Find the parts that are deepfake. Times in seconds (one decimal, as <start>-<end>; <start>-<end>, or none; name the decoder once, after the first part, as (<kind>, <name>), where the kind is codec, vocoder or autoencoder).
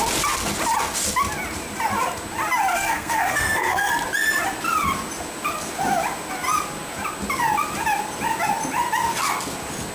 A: 2.7-3.9 (codec, SNAC)